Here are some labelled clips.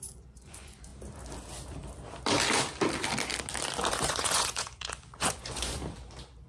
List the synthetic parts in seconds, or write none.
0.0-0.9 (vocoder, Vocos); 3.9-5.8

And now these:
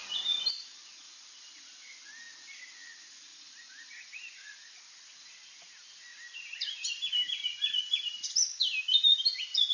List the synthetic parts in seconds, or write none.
3.3-4.8 (vocoder, Vocos)

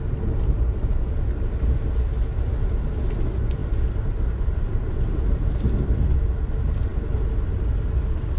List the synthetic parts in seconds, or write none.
none

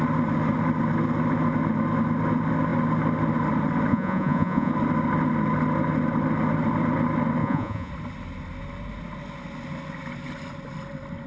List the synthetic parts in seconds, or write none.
3.9-4.7 (vocoder, Vocos); 7.4-7.9